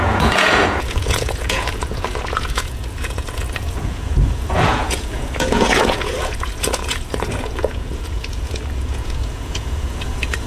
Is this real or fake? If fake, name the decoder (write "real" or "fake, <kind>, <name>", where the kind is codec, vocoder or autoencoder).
fake, vocoder, Vocos